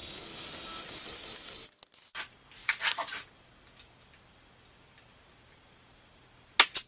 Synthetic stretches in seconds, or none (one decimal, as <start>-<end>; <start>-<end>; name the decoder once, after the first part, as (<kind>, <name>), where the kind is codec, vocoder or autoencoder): none